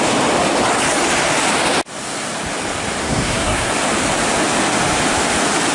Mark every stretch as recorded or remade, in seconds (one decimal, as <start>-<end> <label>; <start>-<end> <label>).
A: 0.0-3.0 recorded; 3.0-3.7 remade; 3.7-5.7 recorded